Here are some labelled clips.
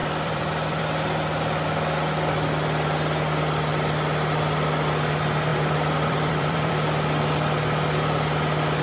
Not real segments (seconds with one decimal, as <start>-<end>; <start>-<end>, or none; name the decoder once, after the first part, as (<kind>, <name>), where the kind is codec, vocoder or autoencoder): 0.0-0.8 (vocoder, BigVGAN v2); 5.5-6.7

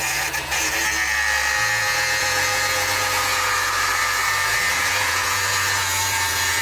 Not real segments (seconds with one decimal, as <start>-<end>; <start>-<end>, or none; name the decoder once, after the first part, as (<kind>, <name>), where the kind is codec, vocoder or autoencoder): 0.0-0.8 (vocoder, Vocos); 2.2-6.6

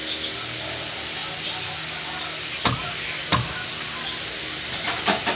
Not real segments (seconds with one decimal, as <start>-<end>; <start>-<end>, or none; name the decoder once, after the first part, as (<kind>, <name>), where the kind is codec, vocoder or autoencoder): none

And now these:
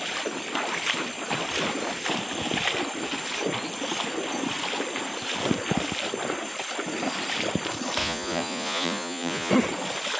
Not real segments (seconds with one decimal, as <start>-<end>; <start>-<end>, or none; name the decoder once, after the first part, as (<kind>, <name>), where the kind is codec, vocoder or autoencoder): 8.0-9.5 (vocoder, Vocos)

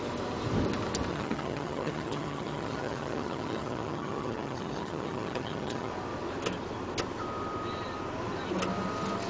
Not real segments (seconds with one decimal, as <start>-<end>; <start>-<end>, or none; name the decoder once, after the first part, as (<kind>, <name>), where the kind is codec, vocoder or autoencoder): 1.1-5.9 (vocoder, HiFi-GAN)